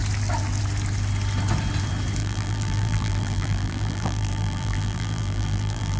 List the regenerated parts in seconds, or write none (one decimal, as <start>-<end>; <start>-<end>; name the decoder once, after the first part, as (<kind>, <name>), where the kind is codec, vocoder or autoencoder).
2.2-6.0 (vocoder, BigVGAN v2)